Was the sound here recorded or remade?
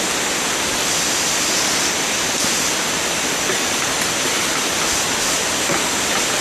recorded